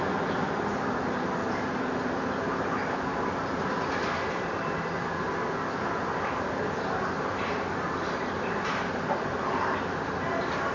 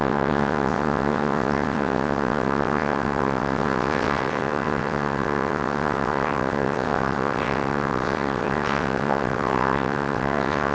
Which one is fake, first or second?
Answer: second